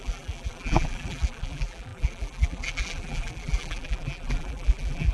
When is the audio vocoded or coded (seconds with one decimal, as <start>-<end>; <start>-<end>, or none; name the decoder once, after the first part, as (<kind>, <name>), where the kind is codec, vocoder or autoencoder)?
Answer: 0.0-5.1 (vocoder, BigVGAN v2)